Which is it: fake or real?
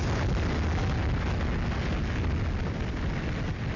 real